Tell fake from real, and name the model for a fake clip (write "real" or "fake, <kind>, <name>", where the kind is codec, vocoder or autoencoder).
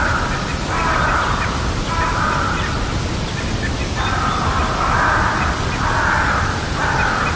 real